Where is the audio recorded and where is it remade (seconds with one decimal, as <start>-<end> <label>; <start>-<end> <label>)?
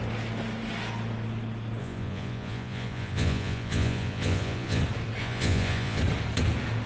0.0-1.8 recorded; 1.8-4.8 remade; 4.8-5.2 recorded; 5.2-6.0 remade; 6.0-6.9 recorded